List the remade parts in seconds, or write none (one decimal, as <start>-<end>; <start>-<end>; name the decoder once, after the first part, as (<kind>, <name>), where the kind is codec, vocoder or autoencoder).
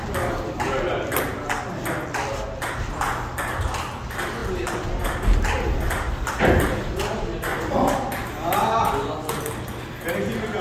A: 7.5-8.9 (vocoder, BigVGAN v2)